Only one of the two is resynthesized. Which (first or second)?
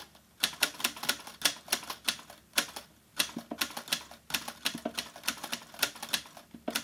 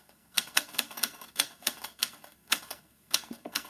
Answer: second